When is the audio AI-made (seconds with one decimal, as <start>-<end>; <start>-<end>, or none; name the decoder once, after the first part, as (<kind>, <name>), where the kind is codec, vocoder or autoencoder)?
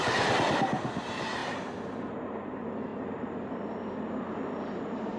none